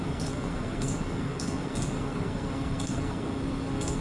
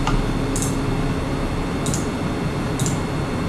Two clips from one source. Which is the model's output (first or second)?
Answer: first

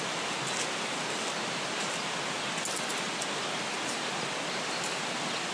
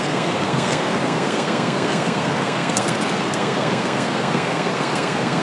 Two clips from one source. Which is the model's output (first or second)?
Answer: second